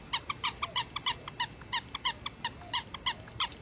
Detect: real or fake real